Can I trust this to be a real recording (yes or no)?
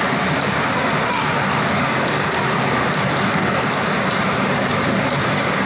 yes